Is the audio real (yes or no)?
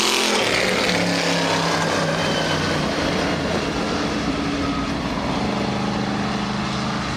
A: yes